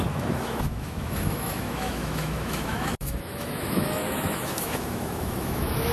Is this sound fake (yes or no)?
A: yes